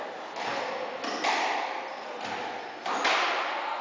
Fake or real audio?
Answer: real